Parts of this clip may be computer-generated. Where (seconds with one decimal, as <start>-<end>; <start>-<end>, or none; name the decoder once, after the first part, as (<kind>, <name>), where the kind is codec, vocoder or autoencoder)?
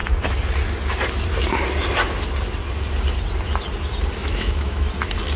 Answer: 4.2-4.9 (autoencoder, DAC-VAE)